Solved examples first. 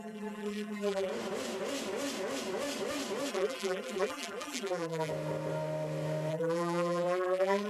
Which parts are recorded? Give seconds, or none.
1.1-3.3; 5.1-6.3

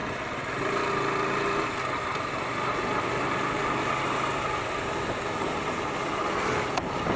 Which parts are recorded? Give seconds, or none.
0.0-7.2

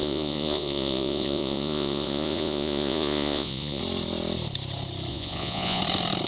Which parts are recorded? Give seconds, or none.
3.8-5.1; 5.8-6.3

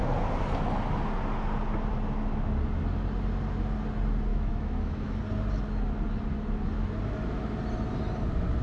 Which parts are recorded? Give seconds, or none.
0.0-4.3; 5.2-8.6